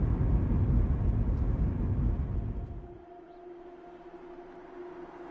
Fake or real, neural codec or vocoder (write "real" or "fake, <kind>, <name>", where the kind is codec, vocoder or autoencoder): real